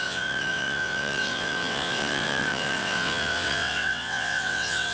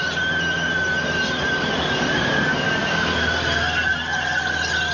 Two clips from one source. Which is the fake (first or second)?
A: first